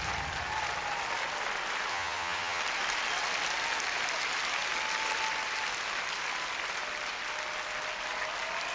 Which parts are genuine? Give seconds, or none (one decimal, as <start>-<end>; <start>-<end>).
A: 0.0-1.9; 2.6-8.7